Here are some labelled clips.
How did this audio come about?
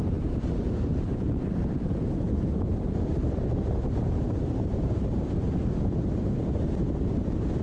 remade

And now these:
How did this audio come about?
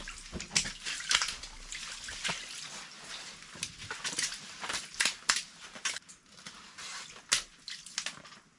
recorded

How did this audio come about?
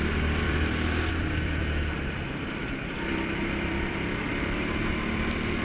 remade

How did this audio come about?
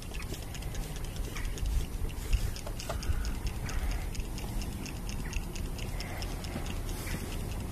recorded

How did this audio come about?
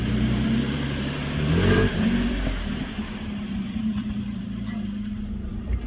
remade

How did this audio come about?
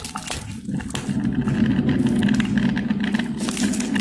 recorded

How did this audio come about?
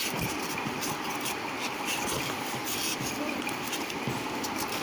remade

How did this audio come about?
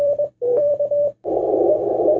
remade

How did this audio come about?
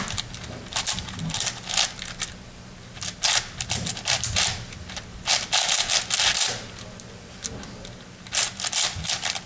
recorded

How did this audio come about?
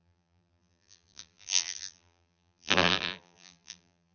remade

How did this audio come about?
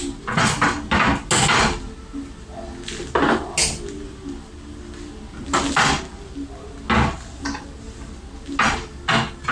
recorded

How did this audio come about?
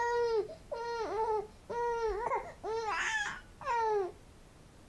recorded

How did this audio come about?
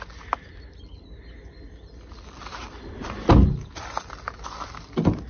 recorded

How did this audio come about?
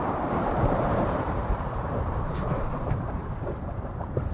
remade